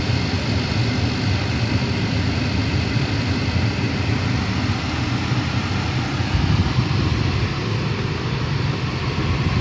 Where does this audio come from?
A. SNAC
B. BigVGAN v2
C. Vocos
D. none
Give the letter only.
D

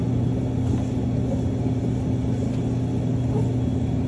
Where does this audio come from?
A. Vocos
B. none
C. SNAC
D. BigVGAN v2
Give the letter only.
B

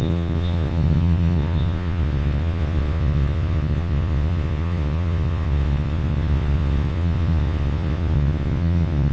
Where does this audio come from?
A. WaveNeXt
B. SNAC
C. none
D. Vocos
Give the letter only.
D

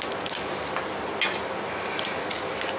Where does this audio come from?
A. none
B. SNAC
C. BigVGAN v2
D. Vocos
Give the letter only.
A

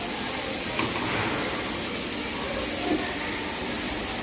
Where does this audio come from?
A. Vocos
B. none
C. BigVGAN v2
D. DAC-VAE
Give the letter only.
B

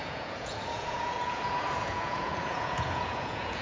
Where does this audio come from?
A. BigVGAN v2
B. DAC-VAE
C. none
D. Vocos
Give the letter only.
D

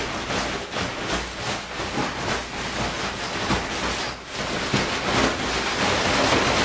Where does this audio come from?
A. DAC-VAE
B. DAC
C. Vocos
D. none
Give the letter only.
D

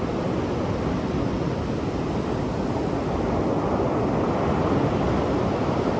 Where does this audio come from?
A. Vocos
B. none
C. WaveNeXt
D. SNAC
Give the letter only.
B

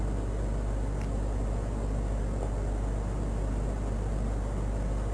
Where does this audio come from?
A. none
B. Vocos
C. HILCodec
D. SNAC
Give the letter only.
A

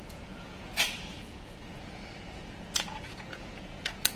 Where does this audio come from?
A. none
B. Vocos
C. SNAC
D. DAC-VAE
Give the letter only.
B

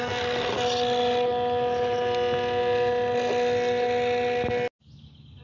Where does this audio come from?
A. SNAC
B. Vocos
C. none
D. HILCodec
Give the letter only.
C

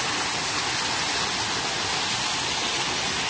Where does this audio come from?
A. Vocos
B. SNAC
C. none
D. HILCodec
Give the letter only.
C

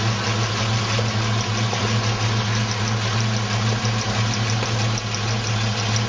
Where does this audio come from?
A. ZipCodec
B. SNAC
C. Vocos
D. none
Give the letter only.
D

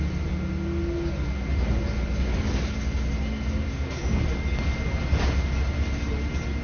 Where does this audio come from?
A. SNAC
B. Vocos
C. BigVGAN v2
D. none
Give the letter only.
D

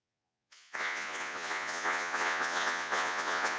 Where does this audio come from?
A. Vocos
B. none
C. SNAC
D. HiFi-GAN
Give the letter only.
A